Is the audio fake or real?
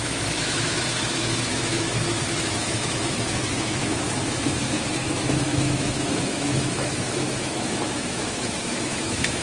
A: fake